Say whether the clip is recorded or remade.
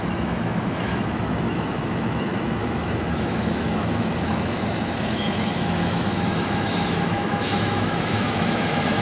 remade